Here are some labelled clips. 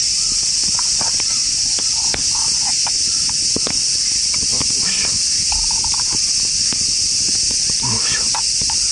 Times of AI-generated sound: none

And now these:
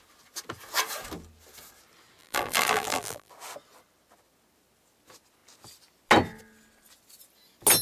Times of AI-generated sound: 2.2-3.3 (vocoder, BigVGAN v2)

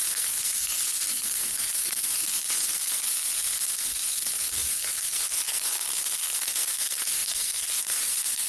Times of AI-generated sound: 0.0-8.5 (codec, SNAC)

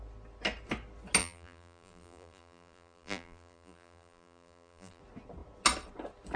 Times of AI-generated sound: 1.2-5.0 (vocoder, BigVGAN v2)

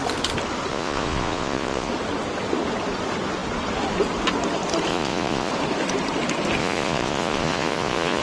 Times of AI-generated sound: 0.7-1.9 (vocoder, Vocos); 4.9-5.5; 6.6-8.2